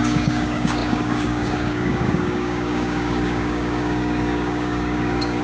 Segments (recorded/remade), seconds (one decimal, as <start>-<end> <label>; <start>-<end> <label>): 0.0-5.4 remade